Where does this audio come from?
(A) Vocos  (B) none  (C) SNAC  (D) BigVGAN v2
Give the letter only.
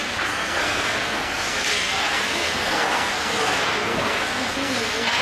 C